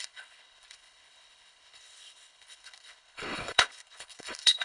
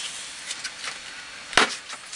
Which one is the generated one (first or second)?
first